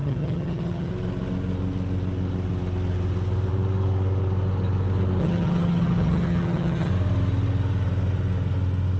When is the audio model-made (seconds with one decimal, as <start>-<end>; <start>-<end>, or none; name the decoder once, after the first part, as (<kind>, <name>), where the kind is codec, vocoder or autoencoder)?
0.0-0.9 (vocoder, HiFi-GAN); 5.2-6.9